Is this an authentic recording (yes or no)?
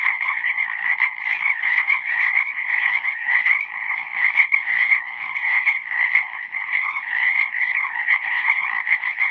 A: no